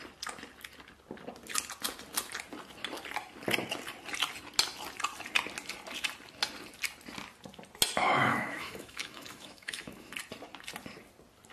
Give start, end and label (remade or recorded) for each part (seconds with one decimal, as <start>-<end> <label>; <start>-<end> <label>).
0.0-8.3 recorded; 8.3-10.1 remade; 10.1-11.5 recorded